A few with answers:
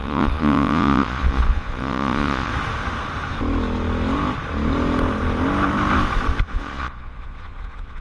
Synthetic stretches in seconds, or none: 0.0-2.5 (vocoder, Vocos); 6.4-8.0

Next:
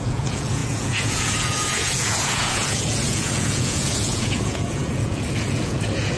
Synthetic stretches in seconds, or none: 0.0-6.2 (vocoder, Vocos)

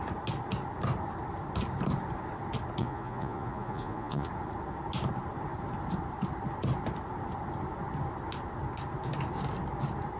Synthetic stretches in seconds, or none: 2.8-4.3 (vocoder, Vocos)

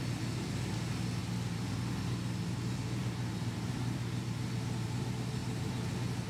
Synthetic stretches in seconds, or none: none

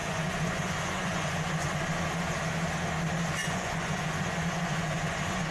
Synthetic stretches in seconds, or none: 0.0-1.8 (vocoder, Vocos); 3.4-5.5

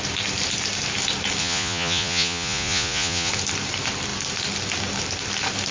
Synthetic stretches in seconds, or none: 1.4-3.3 (vocoder, Vocos)

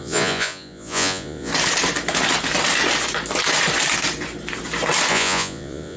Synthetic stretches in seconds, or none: 0.0-1.5 (vocoder, Vocos); 5.1-6.0

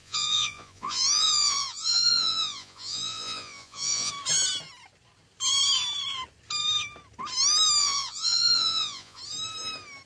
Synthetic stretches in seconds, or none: 0.0-4.1 (vocoder, Vocos); 7.8-9.2